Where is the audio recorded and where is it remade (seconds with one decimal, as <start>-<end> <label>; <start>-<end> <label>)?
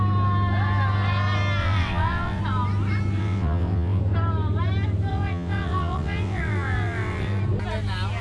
0.0-1.6 recorded; 1.6-2.4 remade; 2.4-3.2 recorded; 3.2-4.0 remade; 4.0-5.1 recorded; 5.1-7.4 remade; 7.4-8.2 recorded